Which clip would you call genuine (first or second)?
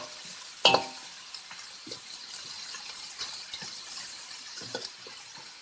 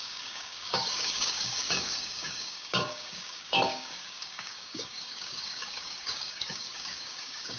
first